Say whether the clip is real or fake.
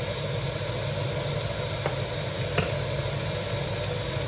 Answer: real